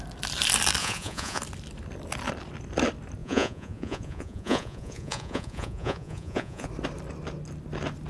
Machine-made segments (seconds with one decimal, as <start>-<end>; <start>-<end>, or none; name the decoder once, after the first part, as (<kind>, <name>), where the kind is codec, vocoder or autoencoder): 0.8-1.4 (vocoder, Vocos); 3.2-6.7